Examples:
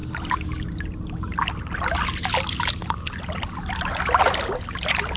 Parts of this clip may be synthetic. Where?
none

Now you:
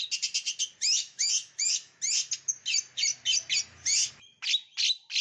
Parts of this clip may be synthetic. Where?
0.9-2.0 (autoencoder, DAC-VAE)

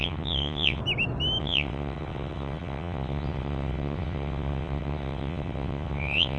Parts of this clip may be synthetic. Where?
0.0-0.8 (vocoder, WaveNeXt); 1.4-6.4

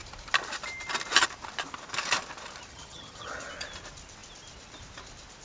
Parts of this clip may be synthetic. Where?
2.7-3.5 (vocoder, HiFi-GAN)

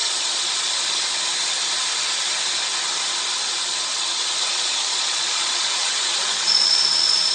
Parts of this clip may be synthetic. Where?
0.0-0.7 (vocoder, Vocos); 3.9-7.3

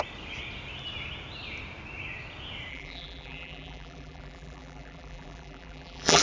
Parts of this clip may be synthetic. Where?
2.7-6.2 (vocoder, BigVGAN v2)

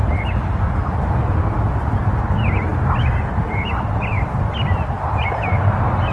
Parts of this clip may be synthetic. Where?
0.0-0.5 (vocoder, BigVGAN v2); 5.2-6.1